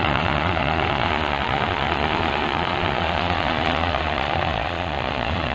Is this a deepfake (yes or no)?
yes